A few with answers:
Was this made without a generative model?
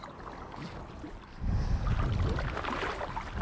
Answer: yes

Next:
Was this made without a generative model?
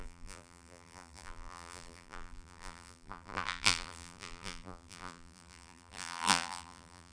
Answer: no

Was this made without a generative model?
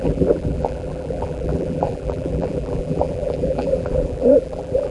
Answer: no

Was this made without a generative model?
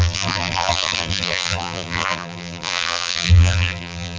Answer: no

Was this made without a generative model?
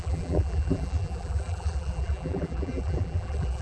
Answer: no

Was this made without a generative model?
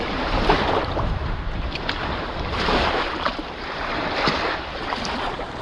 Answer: no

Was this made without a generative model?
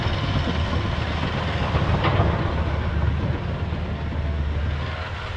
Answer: yes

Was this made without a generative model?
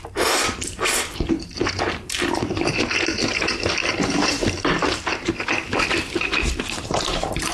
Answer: no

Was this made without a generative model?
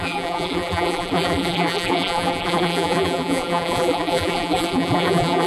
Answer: no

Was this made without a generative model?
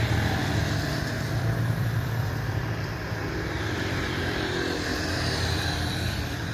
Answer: no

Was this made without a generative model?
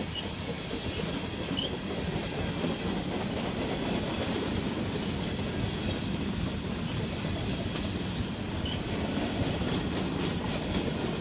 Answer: yes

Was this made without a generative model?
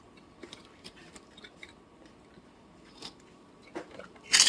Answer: no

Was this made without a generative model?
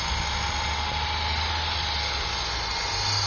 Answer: yes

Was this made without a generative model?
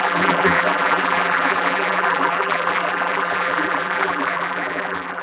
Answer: no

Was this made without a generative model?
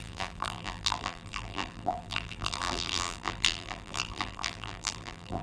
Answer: no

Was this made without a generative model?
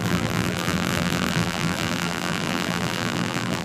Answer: no